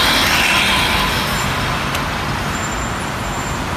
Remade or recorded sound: recorded